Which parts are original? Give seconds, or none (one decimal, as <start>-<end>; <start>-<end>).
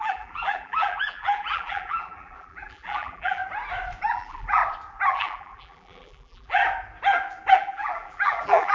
3.4-4.1; 4.6-5.1; 6.6-7.5